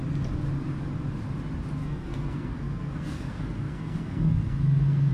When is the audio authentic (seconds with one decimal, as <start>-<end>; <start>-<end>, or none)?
0.0-1.8